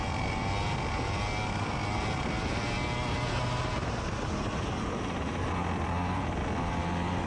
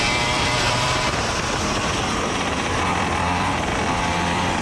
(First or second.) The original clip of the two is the first